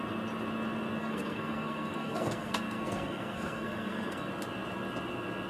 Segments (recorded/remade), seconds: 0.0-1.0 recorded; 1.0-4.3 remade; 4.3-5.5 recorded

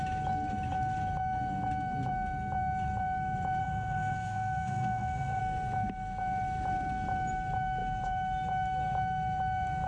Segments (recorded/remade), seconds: 0.0-3.6 recorded; 3.6-5.4 remade; 5.4-9.9 recorded

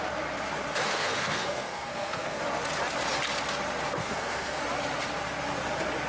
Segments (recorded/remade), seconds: 0.0-0.9 recorded; 0.9-2.4 remade; 2.4-4.0 recorded; 4.0-4.6 remade; 4.6-6.1 recorded

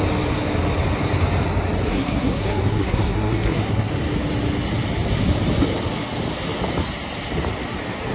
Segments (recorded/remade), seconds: 0.0-1.9 recorded; 1.9-3.9 remade; 3.9-8.1 recorded

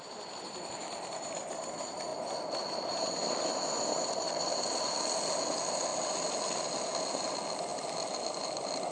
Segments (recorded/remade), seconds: 0.0-8.9 recorded

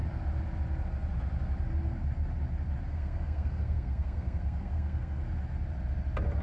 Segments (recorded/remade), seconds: 0.0-2.9 recorded; 2.9-5.2 remade; 5.2-6.4 recorded